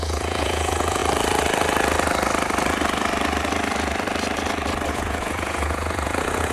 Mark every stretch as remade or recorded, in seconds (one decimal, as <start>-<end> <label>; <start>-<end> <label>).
0.0-1.0 remade; 1.0-4.9 recorded; 4.9-6.5 remade